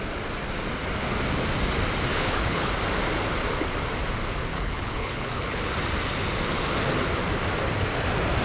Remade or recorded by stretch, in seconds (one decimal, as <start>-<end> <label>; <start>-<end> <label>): 0.0-2.1 recorded; 2.1-2.7 remade; 2.7-4.5 recorded; 4.5-5.6 remade; 5.6-8.4 recorded